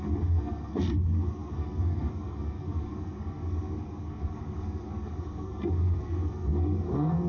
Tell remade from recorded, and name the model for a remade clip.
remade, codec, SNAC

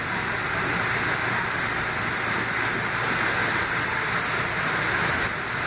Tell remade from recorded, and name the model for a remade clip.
recorded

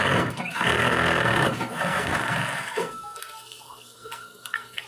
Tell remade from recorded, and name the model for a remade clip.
remade, codec, SNAC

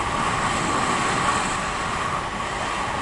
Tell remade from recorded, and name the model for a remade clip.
recorded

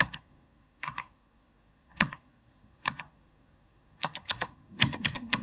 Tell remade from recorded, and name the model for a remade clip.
remade, codec, SNAC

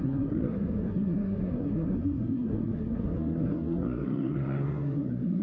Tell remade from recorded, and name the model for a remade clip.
remade, codec, SNAC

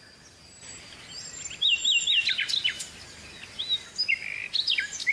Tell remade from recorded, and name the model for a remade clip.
recorded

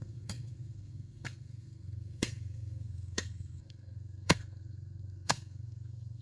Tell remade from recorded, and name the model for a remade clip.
remade, codec, SNAC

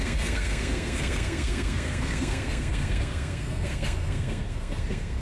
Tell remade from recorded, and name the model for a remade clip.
remade, codec, SNAC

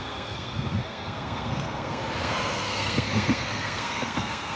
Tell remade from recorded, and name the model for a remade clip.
remade, codec, SNAC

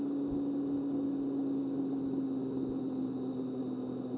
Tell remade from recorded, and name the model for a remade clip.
recorded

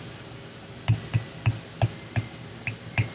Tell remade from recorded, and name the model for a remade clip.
recorded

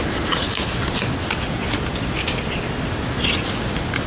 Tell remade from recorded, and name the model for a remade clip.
recorded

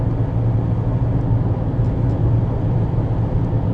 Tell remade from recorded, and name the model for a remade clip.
recorded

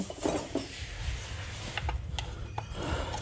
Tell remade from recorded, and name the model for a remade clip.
recorded